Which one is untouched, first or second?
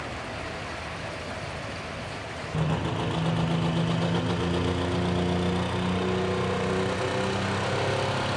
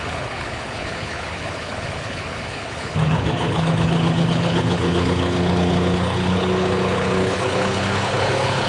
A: first